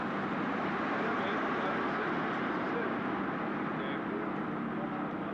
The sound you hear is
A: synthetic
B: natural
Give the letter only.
B